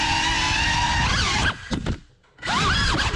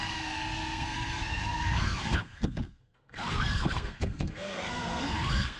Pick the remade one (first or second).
second